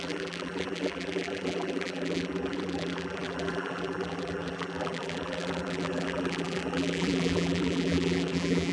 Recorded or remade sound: remade